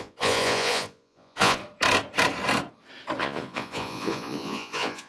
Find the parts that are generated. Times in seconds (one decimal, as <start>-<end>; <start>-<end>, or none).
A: 0.0-1.6; 3.2-5.1